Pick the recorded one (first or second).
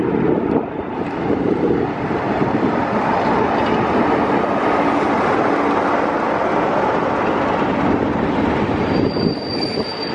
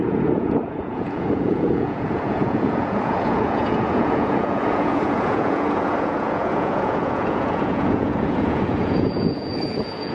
first